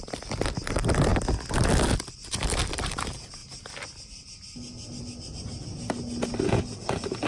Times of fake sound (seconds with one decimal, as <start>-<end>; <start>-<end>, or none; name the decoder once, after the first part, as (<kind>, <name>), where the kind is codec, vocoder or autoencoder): 0.0-1.1 (vocoder, BigVGAN v2); 2.7-3.4